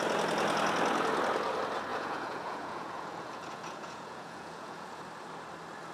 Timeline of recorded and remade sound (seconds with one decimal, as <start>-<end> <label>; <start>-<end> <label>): 0.0-1.9 recorded; 1.9-5.0 remade; 5.0-5.9 recorded